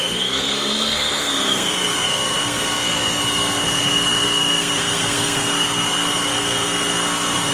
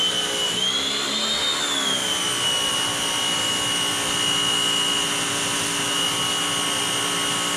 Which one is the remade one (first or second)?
first